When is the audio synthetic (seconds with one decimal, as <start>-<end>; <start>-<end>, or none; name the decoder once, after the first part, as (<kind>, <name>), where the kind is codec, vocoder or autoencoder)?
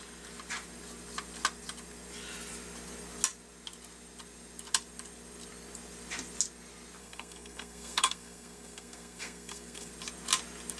7.0-9.9 (codec, SNAC)